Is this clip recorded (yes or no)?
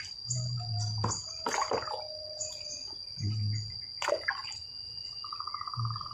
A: yes